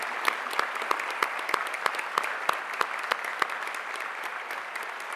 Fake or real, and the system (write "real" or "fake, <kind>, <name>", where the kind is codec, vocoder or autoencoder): real